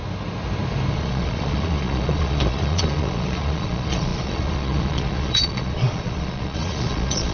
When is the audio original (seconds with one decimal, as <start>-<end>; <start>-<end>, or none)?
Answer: 0.0-0.9